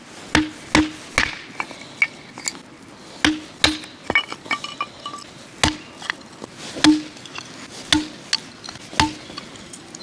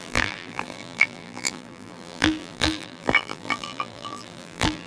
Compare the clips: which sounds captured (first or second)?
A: first